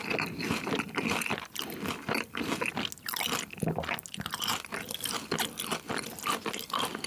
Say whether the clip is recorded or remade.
recorded